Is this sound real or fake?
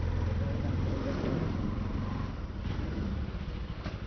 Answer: real